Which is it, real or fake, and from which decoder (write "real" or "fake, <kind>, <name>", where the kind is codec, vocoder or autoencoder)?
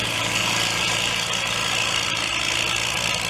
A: real